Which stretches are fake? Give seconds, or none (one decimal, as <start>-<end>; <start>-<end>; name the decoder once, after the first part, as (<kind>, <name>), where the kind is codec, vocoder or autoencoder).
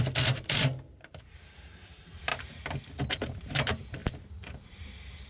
0.0-2.3 (vocoder, BigVGAN v2); 3.1-4.0